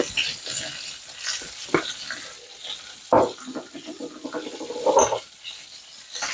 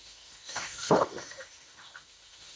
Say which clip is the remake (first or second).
second